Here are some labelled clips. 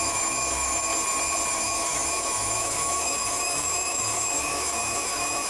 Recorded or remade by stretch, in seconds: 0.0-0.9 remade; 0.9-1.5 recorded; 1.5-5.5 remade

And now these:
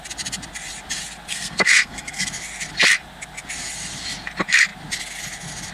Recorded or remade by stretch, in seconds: 0.0-1.3 recorded; 1.3-2.3 remade; 2.3-5.7 recorded

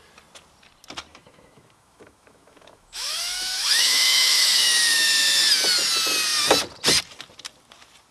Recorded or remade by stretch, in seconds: 0.0-1.1 recorded; 1.1-5.4 remade; 5.4-8.1 recorded